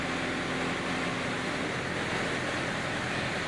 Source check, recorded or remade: recorded